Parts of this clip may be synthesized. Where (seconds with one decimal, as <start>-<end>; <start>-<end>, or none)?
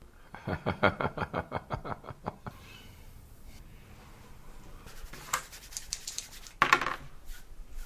0.0-6.4; 7.1-7.9